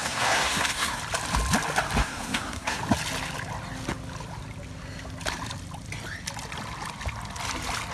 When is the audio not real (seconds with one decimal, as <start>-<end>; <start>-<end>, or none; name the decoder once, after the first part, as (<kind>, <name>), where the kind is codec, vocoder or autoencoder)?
0.0-1.0 (codec, SNAC); 2.0-2.8